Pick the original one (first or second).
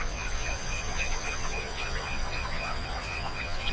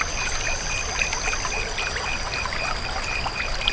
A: second